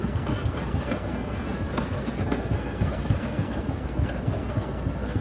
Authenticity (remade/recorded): remade